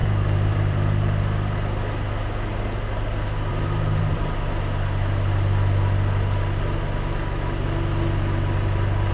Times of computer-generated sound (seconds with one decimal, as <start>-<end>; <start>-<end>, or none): 0.0-1.2; 3.5-4.0